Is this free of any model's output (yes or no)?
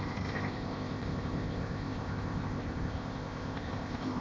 no